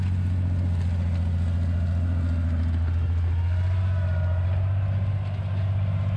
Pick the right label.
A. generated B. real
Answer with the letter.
B